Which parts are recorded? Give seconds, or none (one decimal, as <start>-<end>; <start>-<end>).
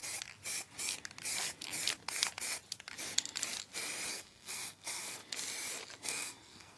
0.0-4.1; 5.2-6.0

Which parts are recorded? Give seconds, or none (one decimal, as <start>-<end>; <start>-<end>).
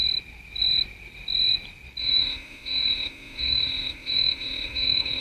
0.0-2.0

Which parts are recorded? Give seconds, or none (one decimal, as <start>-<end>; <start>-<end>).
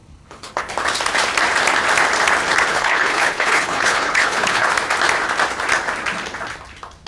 0.6-2.7; 4.7-7.1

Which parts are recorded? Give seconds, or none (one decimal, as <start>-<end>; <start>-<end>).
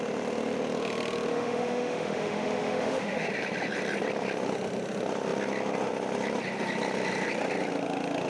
0.0-1.3; 3.3-8.3